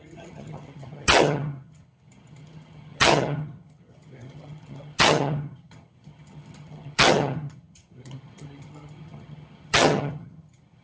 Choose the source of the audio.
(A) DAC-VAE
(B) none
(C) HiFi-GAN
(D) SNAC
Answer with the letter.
C